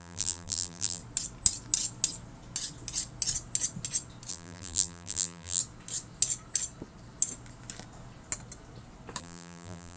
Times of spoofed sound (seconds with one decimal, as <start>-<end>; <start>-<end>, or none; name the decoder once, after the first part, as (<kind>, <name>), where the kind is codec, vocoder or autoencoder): 0.0-1.0 (vocoder, BigVGAN v2); 4.3-5.6; 9.2-10.0